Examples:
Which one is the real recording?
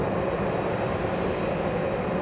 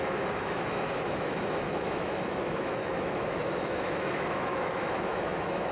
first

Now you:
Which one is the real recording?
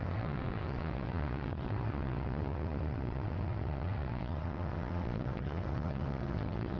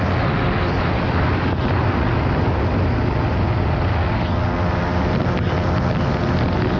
second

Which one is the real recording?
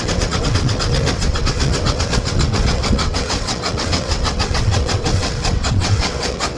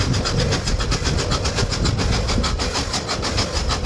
second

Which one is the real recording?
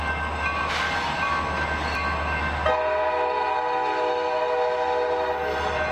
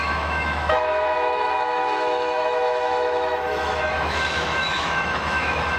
first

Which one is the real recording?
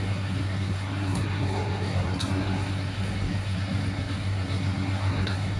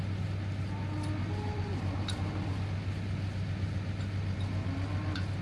second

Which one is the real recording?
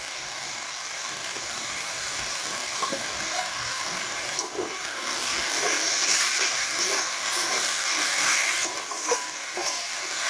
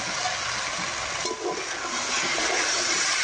second